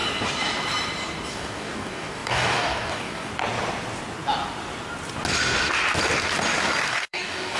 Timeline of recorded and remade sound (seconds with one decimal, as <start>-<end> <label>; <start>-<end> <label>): 0.0-1.3 recorded; 1.3-3.3 remade; 3.3-6.9 recorded; 6.9-7.6 remade